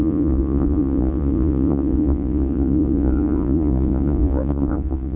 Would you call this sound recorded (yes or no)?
no